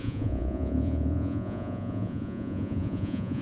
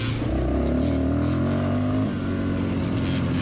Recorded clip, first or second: second